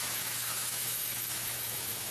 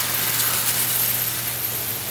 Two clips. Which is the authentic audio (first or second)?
second